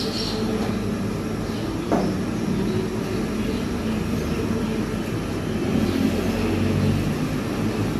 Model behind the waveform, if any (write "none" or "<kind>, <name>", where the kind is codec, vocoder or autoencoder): none